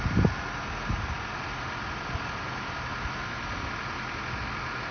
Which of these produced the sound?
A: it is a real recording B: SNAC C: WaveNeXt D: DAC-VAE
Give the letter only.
A